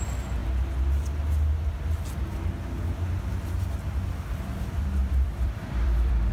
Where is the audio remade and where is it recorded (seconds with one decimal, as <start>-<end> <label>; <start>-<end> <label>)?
0.0-5.0 recorded; 5.0-6.3 remade